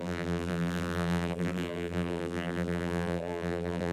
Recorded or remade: remade